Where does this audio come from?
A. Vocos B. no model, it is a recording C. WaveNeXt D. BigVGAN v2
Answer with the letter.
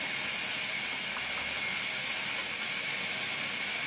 B